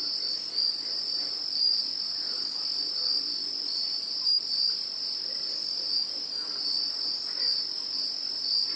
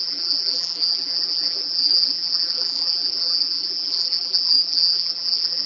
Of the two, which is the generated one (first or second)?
second